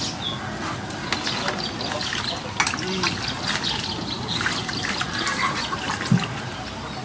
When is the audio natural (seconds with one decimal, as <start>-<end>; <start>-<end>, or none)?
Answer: 0.0-4.6; 5.9-7.0